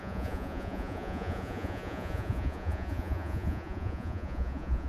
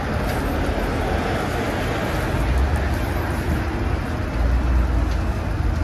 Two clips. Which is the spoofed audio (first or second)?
first